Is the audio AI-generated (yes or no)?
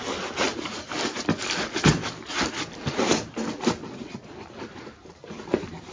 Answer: no